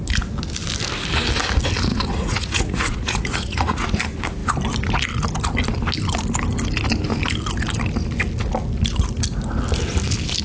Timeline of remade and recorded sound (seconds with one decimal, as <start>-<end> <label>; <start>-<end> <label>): 0.0-1.9 recorded; 1.9-4.0 remade; 4.0-10.4 recorded